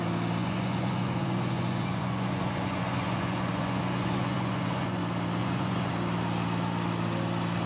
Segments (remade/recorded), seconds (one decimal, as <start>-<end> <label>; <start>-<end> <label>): 0.0-0.4 recorded; 0.4-5.0 remade; 5.0-5.4 recorded; 5.4-5.9 remade; 5.9-7.7 recorded